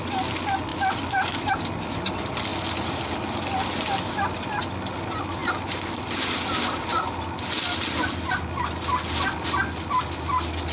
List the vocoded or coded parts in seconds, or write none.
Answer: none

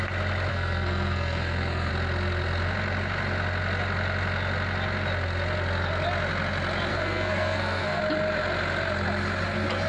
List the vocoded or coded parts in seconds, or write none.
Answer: 0.5-1.9 (codec, SNAC); 6.9-8.0

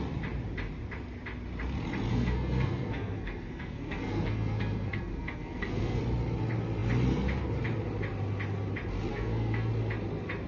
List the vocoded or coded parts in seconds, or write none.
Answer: 2.1-6.0 (codec, SNAC); 9.1-9.7

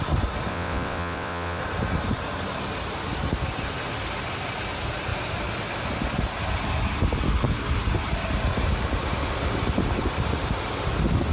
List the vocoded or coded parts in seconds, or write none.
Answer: 0.5-1.6 (vocoder, WaveNeXt)

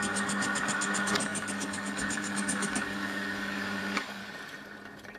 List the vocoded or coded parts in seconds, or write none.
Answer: 0.0-4.2 (codec, DAC)

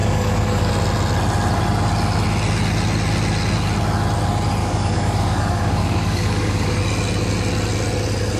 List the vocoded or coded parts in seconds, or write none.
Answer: 0.0-0.7 (codec, DAC); 4.6-6.8